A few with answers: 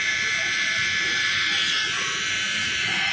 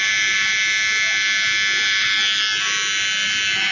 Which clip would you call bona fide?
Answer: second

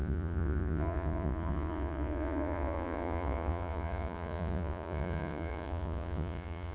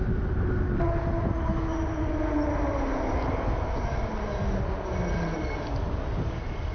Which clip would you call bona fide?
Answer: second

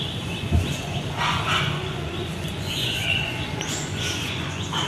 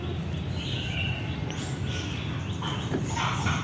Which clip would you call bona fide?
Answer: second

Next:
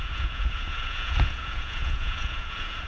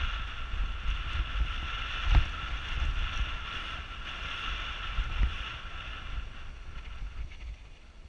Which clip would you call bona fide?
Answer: second